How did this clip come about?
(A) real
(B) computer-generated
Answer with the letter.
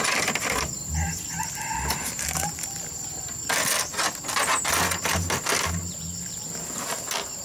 A